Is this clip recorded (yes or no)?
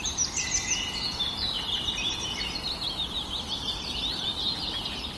yes